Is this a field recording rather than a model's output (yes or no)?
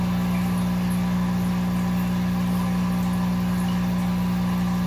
yes